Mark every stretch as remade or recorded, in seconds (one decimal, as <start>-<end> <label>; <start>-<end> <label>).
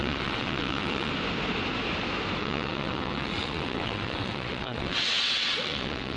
0.0-1.1 remade; 1.1-2.4 recorded; 2.4-6.2 remade